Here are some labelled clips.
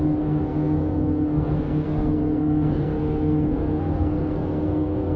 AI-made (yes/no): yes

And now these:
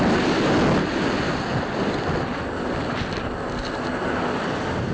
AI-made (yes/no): no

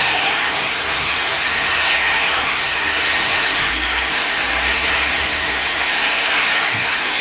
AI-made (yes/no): yes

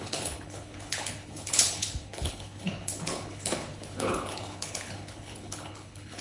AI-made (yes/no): yes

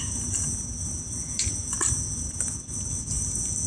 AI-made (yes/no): no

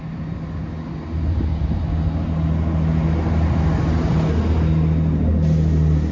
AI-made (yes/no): no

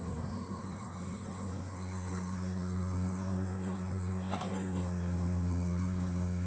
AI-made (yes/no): yes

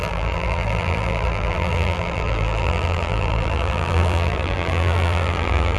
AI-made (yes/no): yes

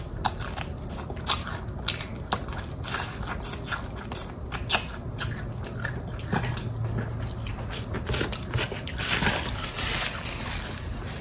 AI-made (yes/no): no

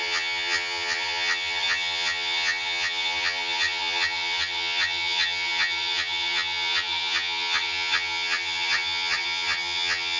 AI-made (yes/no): yes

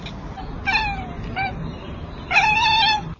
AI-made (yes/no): yes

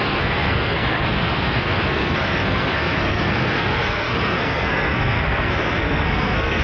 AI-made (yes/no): yes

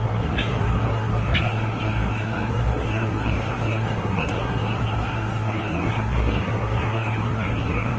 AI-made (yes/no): yes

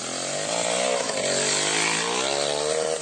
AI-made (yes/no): no